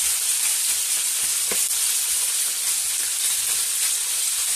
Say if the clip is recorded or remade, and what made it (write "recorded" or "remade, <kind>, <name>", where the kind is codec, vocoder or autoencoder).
recorded